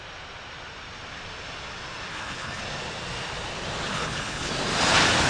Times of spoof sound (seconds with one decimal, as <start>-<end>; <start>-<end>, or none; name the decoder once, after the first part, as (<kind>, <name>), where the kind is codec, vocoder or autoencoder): 2.1-2.6 (codec, HILCodec); 3.9-4.5